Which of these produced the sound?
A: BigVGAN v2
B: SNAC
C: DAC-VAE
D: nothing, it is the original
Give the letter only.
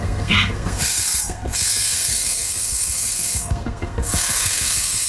B